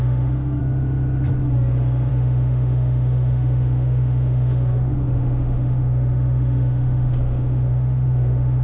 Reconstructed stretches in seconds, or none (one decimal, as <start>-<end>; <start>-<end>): 0.0-0.6; 2.1-8.6